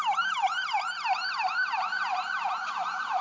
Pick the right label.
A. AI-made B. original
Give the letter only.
B